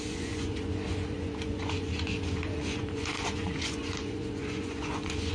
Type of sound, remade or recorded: remade